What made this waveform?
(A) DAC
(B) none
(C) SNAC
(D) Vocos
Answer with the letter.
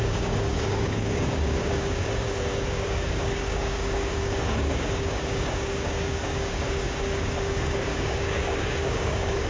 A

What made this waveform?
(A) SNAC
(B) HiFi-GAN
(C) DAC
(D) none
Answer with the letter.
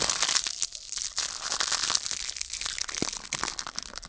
D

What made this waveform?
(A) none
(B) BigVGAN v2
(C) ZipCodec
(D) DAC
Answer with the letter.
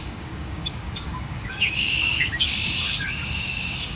D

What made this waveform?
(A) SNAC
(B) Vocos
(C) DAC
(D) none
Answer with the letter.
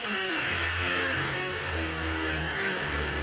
C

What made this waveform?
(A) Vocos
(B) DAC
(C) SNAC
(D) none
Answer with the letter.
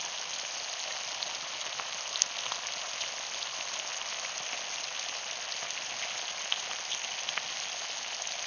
D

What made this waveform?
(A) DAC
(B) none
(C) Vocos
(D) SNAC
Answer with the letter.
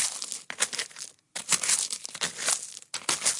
B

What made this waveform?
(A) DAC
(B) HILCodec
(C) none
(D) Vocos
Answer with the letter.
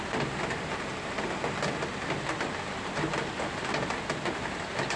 C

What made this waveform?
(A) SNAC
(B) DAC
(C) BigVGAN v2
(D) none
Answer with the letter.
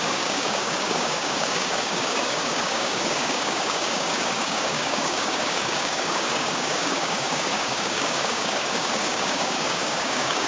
B